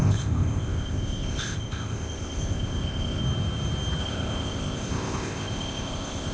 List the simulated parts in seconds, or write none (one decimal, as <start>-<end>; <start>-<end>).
0.0-3.2; 4.0-6.3

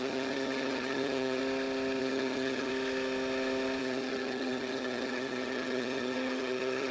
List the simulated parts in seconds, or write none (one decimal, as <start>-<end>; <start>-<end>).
0.0-1.4; 2.0-2.7; 3.8-6.9

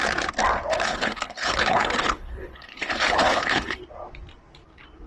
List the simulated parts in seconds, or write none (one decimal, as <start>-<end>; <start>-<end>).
0.7-3.8

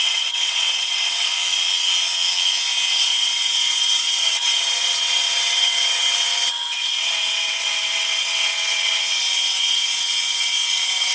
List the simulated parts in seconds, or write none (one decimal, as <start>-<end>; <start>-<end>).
0.0-1.3; 2.9-11.1